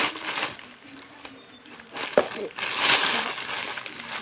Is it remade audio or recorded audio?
recorded